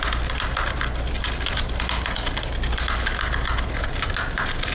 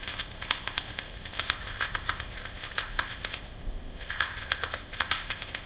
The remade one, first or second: second